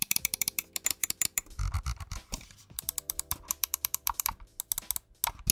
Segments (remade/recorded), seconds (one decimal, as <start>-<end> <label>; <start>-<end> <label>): 0.0-4.5 remade; 4.5-5.5 recorded